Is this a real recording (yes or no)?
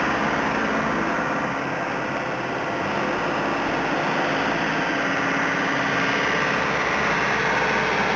yes